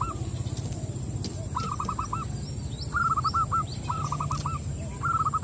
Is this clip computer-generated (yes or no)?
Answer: no